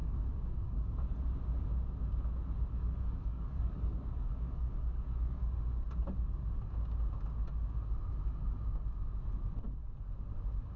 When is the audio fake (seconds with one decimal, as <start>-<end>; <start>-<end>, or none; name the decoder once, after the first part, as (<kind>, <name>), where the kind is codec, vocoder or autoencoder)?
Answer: 0.0-1.1 (codec, DAC); 2.8-5.6